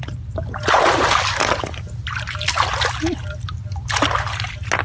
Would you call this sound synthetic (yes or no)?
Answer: no